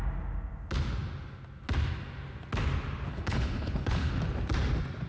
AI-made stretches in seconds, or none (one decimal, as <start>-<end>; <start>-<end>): 3.1-4.1